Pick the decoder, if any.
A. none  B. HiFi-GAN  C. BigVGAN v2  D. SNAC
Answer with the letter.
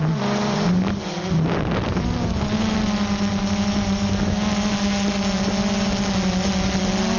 A